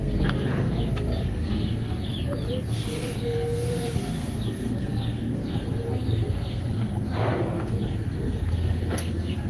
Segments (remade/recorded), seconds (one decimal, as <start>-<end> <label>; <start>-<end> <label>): 0.0-2.1 remade; 2.1-2.7 recorded; 2.7-9.5 remade